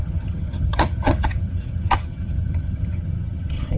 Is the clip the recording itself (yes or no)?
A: no